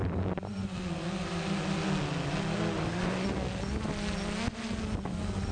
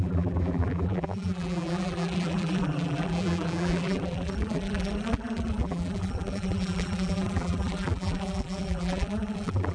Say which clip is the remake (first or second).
second